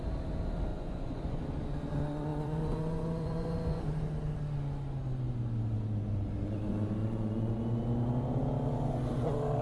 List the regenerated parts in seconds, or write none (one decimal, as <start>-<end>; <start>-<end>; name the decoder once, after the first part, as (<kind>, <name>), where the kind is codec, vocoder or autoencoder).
0.7-1.4 (vocoder, Vocos); 2.3-3.8; 7.0-7.5